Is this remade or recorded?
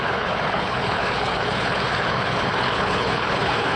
remade